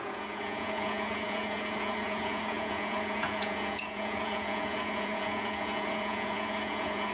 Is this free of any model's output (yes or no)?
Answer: no